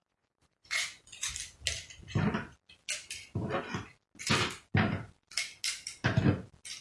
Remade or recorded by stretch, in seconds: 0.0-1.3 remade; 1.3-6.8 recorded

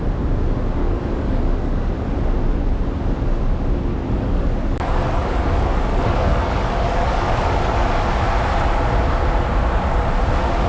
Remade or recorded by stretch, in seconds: 0.0-0.8 recorded; 0.8-1.9 remade; 1.9-3.9 recorded; 3.9-8.1 remade; 8.1-10.7 recorded

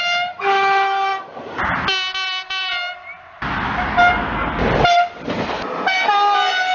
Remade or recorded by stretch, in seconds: 0.0-6.7 recorded

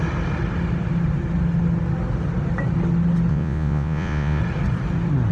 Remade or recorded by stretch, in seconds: 0.0-3.3 recorded; 3.3-4.4 remade; 4.4-5.3 recorded

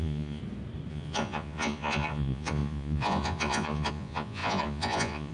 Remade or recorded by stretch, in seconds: 0.0-0.4 remade; 0.4-0.9 recorded; 0.9-5.3 remade

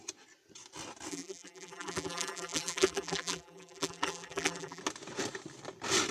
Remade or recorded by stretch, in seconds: 0.0-1.1 recorded; 1.1-4.8 remade; 4.8-6.1 recorded

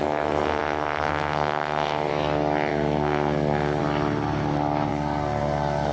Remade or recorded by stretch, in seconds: 0.0-2.1 remade; 2.1-2.7 recorded; 2.7-3.8 remade; 3.8-4.9 recorded; 4.9-5.9 remade